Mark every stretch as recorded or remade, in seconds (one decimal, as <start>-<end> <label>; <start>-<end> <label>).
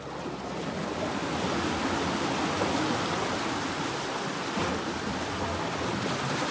0.0-6.5 recorded